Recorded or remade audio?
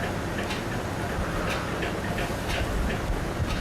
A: recorded